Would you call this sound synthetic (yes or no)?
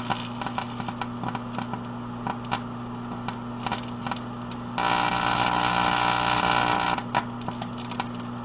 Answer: no